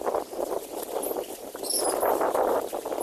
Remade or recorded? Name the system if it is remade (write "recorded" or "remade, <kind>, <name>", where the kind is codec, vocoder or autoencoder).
recorded